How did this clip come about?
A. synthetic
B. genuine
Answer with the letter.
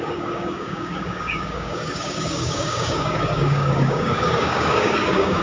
A